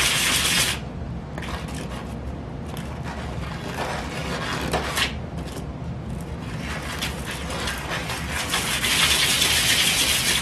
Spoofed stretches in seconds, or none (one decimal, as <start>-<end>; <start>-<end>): none